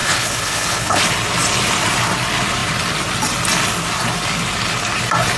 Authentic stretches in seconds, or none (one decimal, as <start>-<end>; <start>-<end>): 1.0-5.4